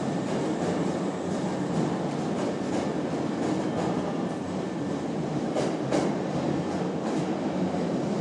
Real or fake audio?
fake